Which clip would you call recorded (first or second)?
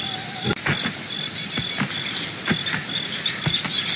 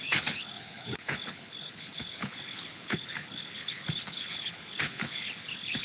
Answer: first